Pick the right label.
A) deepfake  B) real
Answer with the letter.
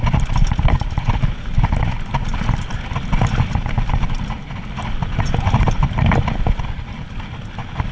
B